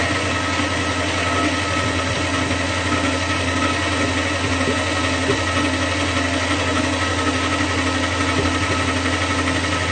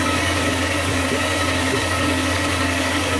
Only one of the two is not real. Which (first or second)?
second